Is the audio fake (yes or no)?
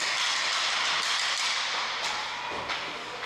no